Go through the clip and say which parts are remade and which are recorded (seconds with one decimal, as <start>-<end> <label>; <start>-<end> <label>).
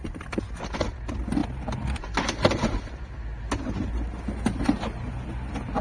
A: 0.0-5.8 recorded